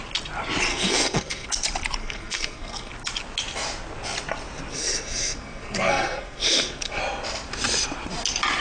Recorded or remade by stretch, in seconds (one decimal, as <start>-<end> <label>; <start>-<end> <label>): 0.0-0.7 recorded; 0.7-1.5 remade; 1.5-2.0 recorded; 2.0-2.9 remade; 2.9-4.7 recorded; 4.7-7.0 remade; 7.0-8.6 recorded

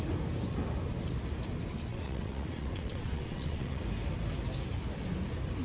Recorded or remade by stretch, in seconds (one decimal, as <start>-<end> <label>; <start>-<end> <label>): 0.0-1.9 recorded; 1.9-3.8 remade; 3.8-5.6 recorded

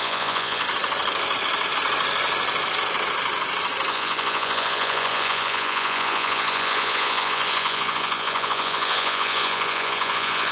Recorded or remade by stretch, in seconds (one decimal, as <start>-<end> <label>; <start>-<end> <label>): 0.0-0.6 remade; 0.6-3.9 recorded; 3.9-10.5 remade

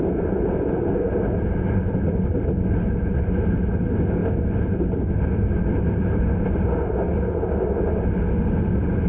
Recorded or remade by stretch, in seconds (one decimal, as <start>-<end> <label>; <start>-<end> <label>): 0.0-9.1 recorded

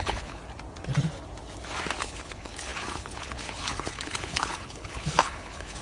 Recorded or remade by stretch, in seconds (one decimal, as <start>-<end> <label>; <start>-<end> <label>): 0.0-0.4 remade; 0.4-2.0 recorded; 2.0-5.8 remade